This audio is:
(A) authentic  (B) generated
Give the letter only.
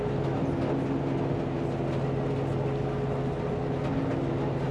A